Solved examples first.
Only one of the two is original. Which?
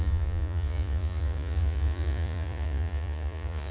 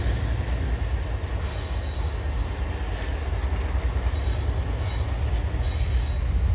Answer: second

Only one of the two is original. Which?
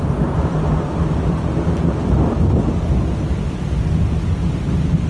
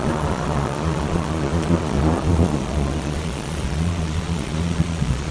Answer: first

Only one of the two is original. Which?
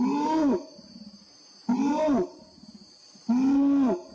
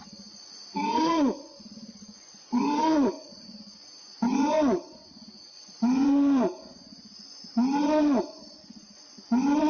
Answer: first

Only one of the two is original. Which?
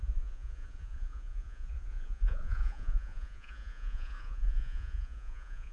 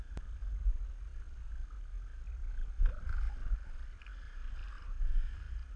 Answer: second